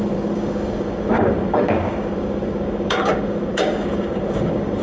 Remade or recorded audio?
remade